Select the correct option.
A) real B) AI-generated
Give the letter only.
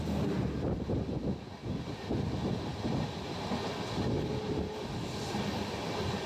A